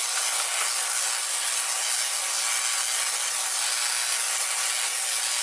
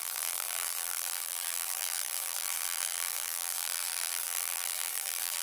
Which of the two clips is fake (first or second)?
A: second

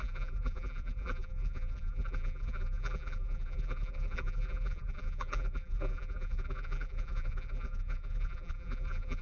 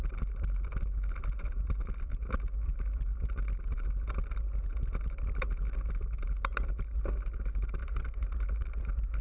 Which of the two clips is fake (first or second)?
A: first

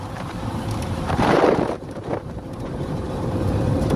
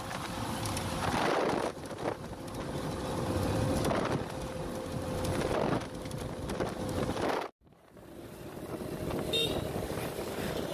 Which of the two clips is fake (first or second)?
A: first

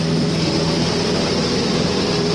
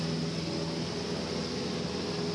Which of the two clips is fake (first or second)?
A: first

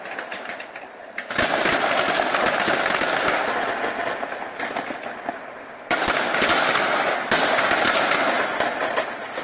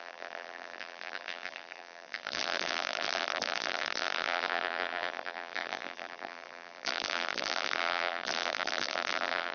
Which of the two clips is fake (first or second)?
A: second